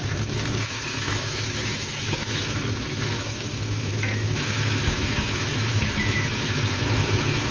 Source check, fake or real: fake